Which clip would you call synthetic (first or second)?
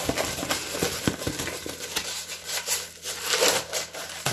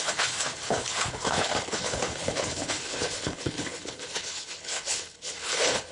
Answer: second